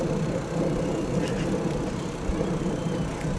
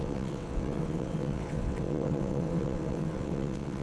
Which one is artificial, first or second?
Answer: second